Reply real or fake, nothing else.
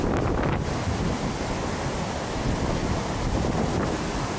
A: real